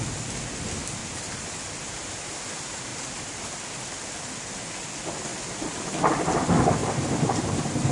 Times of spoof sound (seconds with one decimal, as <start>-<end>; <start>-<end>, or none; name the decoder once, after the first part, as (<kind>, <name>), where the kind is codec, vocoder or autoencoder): 1.0-1.5 (vocoder, BigVGAN v2); 2.9-3.5; 6.8-7.9